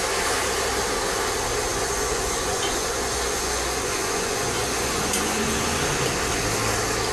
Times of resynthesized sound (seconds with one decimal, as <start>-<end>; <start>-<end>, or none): 1.7-5.8